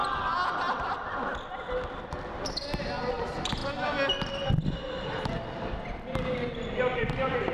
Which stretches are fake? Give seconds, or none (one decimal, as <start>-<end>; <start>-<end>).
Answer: 3.1-3.6; 6.4-7.5